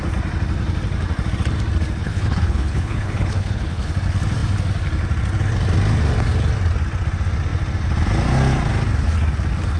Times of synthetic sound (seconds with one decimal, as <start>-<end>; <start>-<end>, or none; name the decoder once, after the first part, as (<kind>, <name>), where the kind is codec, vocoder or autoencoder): 2.0-3.9 (codec, HILCodec)